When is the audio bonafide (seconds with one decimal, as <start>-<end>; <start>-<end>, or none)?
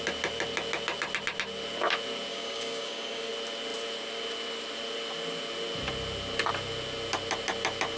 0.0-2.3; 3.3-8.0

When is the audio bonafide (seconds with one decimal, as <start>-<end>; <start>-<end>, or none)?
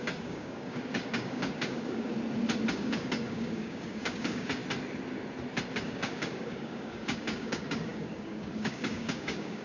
2.1-2.7; 4.6-5.8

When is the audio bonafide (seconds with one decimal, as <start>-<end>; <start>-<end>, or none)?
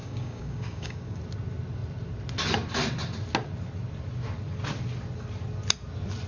1.2-6.3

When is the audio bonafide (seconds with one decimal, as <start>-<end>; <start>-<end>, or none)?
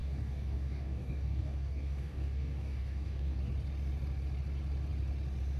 3.4-5.6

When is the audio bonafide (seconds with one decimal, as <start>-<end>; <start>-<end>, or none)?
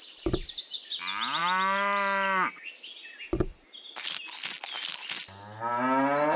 0.0-6.4